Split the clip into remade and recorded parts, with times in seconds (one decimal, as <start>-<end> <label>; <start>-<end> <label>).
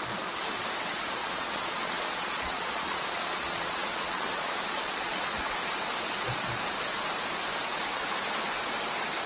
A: 0.0-1.2 recorded; 1.2-5.2 remade; 5.2-9.3 recorded